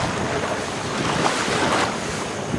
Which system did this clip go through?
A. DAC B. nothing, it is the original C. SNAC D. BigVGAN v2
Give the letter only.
B